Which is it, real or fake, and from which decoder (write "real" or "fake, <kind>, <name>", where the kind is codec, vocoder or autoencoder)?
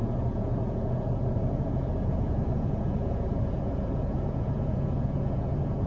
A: fake, vocoder, Vocos